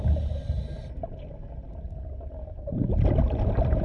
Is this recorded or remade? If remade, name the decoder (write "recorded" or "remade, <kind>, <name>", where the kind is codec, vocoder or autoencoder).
recorded